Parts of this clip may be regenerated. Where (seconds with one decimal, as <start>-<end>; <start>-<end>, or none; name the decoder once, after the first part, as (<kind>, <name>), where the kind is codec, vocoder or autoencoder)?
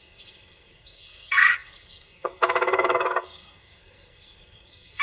0.0-5.0 (codec, SNAC)